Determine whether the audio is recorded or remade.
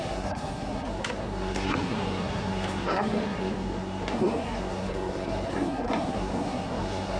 remade